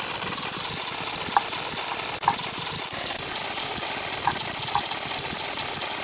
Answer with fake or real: real